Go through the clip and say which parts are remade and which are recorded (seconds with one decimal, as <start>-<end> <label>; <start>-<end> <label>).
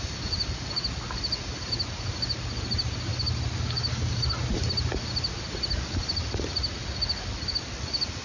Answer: 0.0-8.2 recorded